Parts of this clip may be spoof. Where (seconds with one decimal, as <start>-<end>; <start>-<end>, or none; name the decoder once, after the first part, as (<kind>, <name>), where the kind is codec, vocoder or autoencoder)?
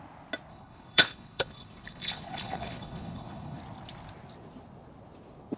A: 0.5-3.6 (codec, HILCodec)